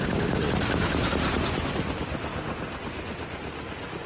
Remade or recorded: recorded